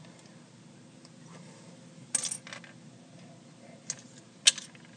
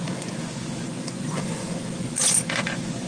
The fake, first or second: second